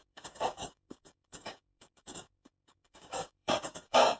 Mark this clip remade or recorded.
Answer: remade